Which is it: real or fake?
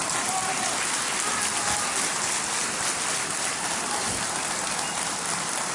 real